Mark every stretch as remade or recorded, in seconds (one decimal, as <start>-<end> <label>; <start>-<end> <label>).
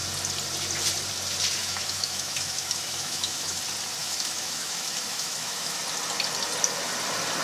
0.0-1.6 recorded; 1.6-3.6 remade; 3.6-4.0 recorded; 4.0-5.8 remade; 5.8-7.4 recorded